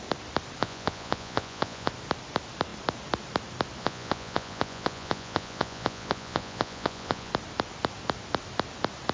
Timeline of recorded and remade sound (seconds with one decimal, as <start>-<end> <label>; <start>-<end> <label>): 0.0-0.6 recorded; 0.6-1.9 remade; 1.9-3.8 recorded; 3.8-7.3 remade; 7.3-9.1 recorded